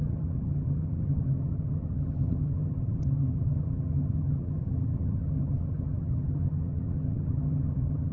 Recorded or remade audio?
remade